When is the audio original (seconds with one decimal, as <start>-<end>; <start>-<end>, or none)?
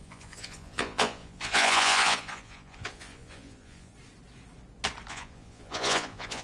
3.9-5.1